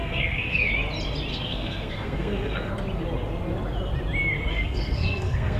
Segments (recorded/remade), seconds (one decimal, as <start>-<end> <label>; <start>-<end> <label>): 0.0-0.7 remade; 0.7-1.3 recorded; 1.3-2.7 remade; 2.7-4.5 recorded; 4.5-5.6 remade